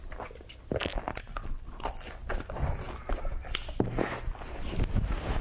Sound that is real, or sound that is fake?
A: real